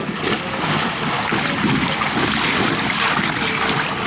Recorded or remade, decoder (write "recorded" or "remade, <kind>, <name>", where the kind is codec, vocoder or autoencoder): recorded